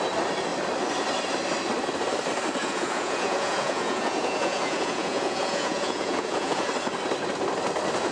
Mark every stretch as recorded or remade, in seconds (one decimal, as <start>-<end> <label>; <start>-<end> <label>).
0.0-2.6 recorded; 2.6-6.7 remade; 6.7-8.1 recorded